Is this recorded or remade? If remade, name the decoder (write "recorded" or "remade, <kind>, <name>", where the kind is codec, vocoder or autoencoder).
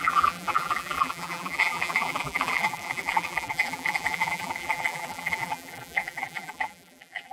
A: remade, vocoder, BigVGAN v2